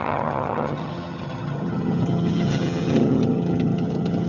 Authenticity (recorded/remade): remade